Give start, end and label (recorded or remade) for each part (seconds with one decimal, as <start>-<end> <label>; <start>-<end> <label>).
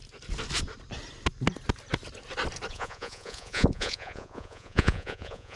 0.0-2.7 recorded; 2.7-5.6 remade